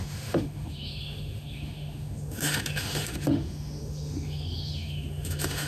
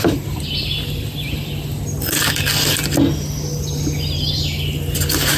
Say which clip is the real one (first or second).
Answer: second